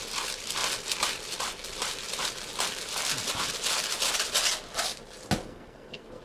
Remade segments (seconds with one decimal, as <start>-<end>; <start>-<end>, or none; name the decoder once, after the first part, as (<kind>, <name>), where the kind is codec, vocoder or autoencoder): 5.4-6.2 (codec, SNAC)